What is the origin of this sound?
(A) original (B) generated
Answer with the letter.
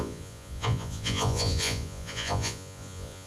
B